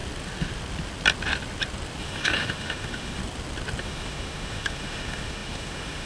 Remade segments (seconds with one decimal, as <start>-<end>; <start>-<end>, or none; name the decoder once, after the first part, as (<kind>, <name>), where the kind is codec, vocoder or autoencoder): 2.0-3.2 (autoencoder, DAC-VAE); 3.8-6.1